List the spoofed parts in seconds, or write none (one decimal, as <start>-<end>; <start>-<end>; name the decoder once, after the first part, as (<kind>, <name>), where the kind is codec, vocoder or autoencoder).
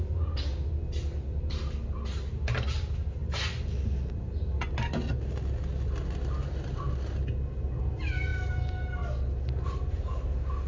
none